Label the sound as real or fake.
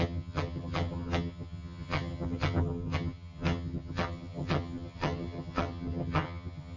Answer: fake